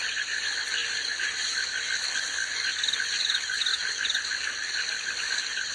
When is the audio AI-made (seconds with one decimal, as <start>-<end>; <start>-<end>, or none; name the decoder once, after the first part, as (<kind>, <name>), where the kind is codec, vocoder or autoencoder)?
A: none